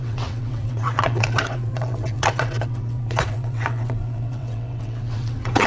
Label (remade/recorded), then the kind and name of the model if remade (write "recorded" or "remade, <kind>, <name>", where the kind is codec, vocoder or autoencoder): remade, vocoder, WaveNeXt